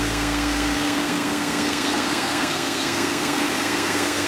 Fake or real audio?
fake